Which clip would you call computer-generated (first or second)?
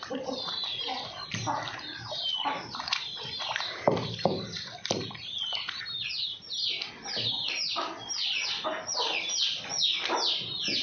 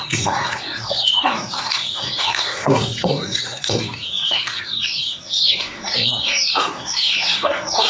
second